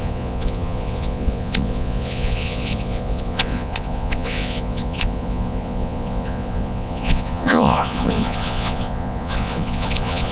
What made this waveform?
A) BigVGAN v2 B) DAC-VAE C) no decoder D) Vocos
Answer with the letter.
D